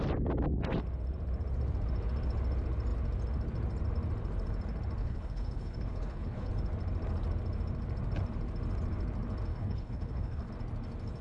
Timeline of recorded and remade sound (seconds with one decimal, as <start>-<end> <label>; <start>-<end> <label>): 0.0-5.0 recorded; 5.0-6.5 remade; 6.5-9.5 recorded; 9.5-10.5 remade; 10.5-11.2 recorded